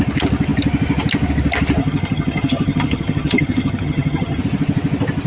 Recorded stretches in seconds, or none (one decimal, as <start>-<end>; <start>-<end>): 0.0-1.8; 4.4-5.3